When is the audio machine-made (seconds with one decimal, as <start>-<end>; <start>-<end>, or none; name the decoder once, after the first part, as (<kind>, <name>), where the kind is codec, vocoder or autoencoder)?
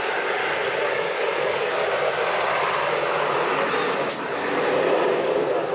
0.0-0.4 (codec, DAC); 0.9-1.8; 5.2-5.7